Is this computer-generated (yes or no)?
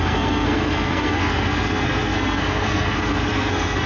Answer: yes